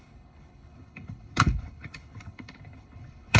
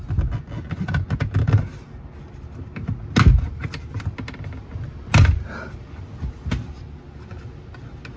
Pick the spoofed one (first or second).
first